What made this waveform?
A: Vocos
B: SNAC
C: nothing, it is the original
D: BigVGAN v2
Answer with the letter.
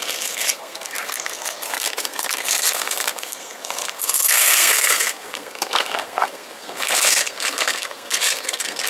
B